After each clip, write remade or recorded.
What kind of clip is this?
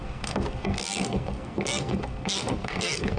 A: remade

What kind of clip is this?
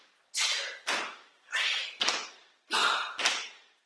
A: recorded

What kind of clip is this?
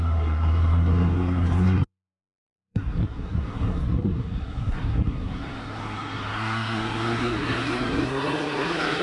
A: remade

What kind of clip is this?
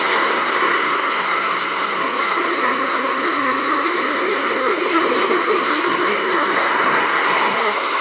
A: remade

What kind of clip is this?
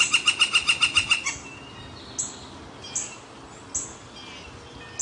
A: recorded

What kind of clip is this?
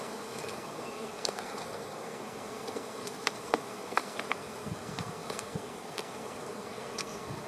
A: remade